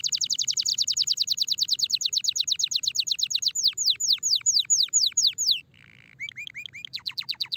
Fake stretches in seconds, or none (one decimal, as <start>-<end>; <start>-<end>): none